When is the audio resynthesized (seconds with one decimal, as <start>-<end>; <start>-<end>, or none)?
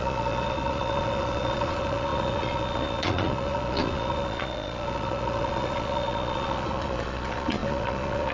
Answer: 0.0-8.3